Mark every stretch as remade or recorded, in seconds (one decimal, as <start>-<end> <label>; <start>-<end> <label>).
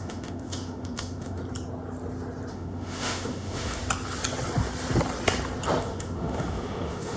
0.0-1.4 remade; 1.4-2.5 recorded; 2.5-3.8 remade; 3.8-5.8 recorded; 5.8-7.2 remade